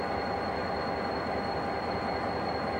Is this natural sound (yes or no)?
yes